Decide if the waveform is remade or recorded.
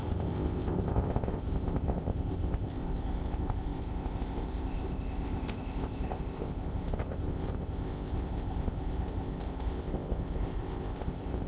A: remade